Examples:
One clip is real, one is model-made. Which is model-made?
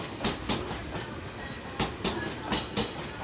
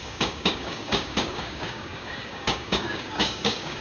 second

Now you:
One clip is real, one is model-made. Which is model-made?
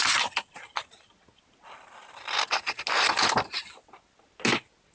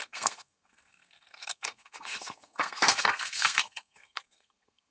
second